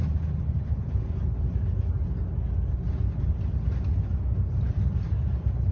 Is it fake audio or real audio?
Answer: real